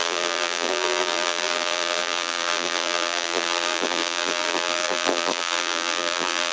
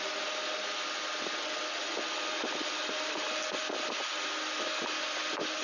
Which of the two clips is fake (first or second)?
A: first